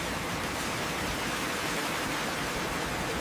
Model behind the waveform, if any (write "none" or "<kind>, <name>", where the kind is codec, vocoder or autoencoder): none